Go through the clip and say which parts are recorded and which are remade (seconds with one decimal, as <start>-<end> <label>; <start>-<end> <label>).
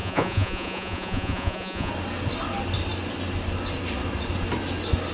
0.0-1.9 remade; 1.9-5.1 recorded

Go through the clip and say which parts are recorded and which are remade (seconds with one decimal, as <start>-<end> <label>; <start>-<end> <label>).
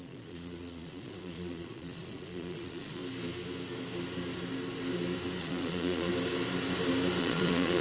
0.0-3.0 remade; 3.0-5.4 recorded; 5.4-6.1 remade; 6.1-7.2 recorded; 7.2-7.8 remade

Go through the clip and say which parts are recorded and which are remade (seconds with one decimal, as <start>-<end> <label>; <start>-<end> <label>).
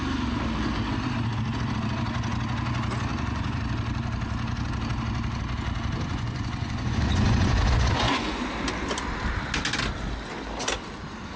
0.0-3.1 recorded; 3.1-3.6 remade; 3.6-6.1 recorded; 6.1-8.5 remade; 8.5-11.4 recorded